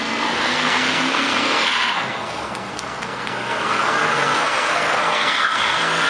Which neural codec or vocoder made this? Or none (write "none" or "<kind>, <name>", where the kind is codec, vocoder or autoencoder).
codec, SNAC